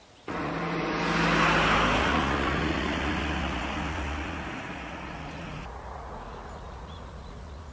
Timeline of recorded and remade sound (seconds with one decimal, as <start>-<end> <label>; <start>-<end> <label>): 0.0-0.5 remade; 0.5-2.0 recorded; 2.0-7.7 remade